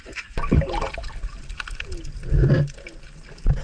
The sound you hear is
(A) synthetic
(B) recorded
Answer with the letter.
B